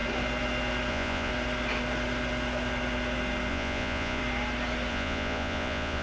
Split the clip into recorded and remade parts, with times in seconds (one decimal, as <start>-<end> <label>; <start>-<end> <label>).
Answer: 0.0-0.9 recorded; 0.9-1.3 remade; 1.3-3.5 recorded; 3.5-4.2 remade; 4.2-4.9 recorded; 4.9-6.0 remade